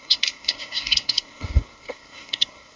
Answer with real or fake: fake